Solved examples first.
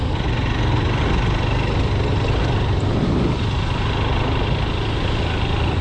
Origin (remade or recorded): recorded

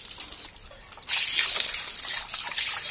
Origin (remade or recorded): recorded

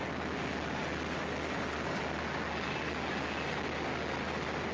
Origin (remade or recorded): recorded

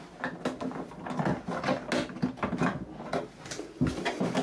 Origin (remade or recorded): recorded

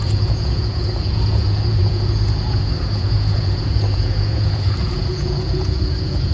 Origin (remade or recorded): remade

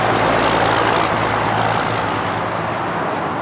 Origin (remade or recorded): recorded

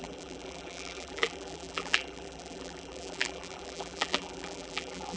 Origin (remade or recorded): remade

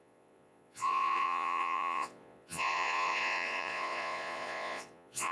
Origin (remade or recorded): remade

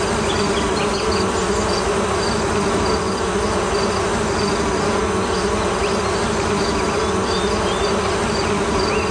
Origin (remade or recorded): recorded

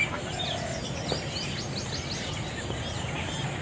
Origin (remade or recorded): recorded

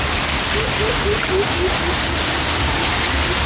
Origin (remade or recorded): recorded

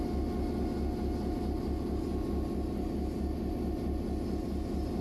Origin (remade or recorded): recorded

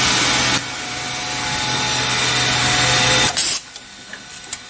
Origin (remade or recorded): recorded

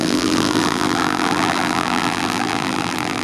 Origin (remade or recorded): remade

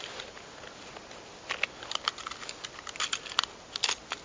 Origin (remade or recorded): recorded